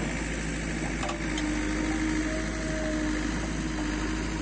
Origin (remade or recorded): recorded